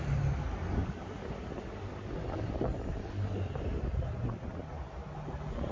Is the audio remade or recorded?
recorded